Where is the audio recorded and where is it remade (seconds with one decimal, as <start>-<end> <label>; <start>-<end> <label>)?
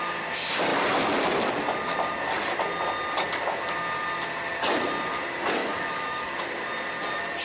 0.0-5.6 recorded; 5.6-6.3 remade; 6.3-7.4 recorded